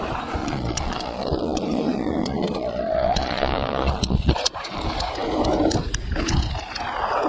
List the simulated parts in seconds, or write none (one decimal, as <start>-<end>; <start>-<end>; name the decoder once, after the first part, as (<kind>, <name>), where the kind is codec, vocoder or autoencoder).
0.4-4.8 (vocoder, Vocos)